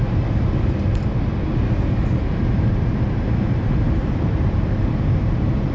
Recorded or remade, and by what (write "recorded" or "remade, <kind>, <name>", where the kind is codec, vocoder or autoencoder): recorded